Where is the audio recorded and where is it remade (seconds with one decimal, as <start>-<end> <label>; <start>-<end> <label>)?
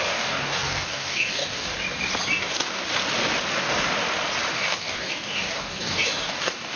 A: 0.0-1.7 remade; 1.7-2.4 recorded; 2.4-2.8 remade; 2.8-3.5 recorded; 3.5-3.9 remade; 3.9-4.5 recorded; 4.5-6.8 remade